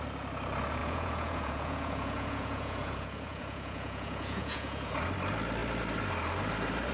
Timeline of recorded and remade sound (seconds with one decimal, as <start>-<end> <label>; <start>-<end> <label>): 0.0-0.8 recorded; 0.8-4.9 remade; 4.9-6.9 recorded